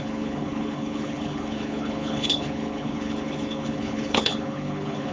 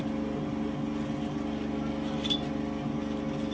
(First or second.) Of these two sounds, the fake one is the first